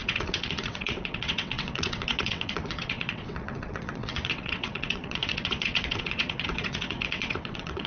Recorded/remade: remade